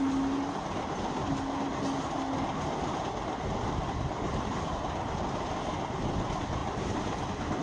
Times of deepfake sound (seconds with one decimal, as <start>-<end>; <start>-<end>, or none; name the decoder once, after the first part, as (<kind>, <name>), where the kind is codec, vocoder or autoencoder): none